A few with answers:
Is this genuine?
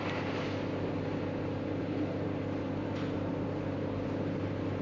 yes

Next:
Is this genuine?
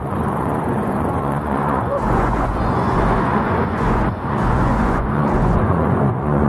no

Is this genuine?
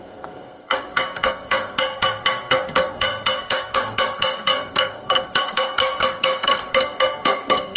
no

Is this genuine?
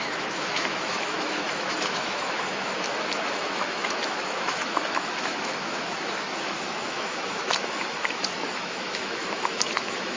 no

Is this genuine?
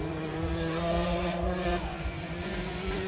no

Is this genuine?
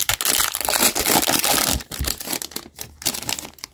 yes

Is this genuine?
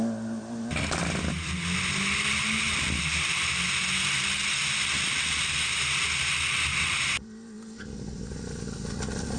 yes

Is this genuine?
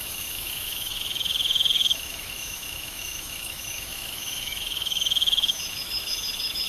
no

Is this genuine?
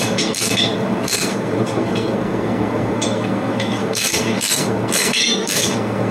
no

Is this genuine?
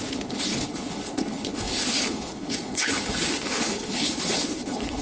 no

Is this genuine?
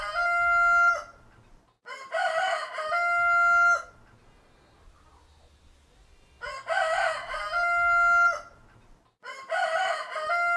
yes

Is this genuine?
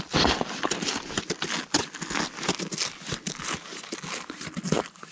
yes